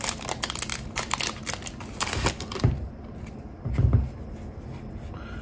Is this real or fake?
real